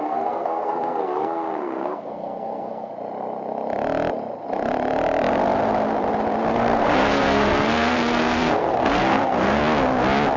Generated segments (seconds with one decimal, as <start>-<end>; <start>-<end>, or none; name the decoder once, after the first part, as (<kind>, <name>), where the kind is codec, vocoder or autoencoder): 0.0-2.9 (codec, SNAC); 6.5-9.6